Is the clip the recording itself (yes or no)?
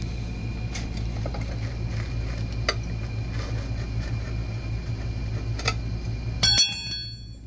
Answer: yes